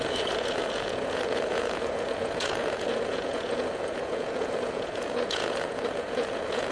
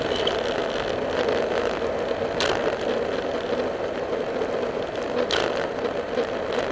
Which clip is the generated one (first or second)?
first